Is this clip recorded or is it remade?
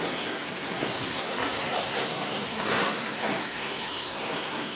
remade